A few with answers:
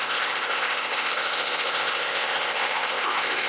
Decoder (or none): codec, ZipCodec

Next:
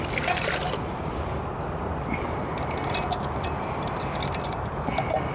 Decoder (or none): none